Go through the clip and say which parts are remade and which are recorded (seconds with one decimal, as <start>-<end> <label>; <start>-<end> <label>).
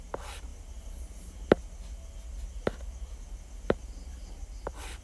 0.0-5.0 recorded